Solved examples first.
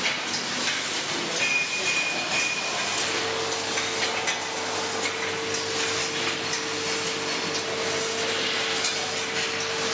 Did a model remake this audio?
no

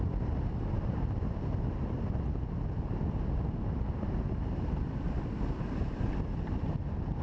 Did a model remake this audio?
no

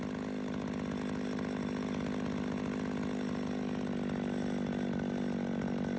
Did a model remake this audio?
no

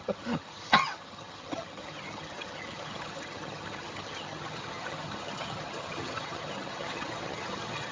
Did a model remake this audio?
yes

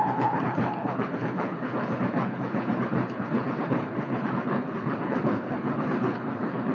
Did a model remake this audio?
yes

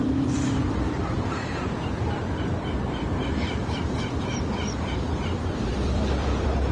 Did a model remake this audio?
yes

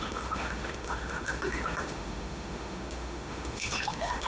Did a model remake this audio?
yes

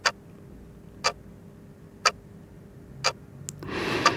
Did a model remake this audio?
no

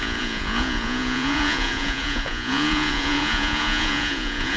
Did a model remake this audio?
yes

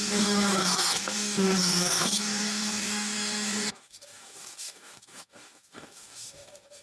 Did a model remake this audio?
yes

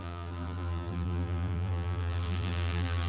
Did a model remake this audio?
yes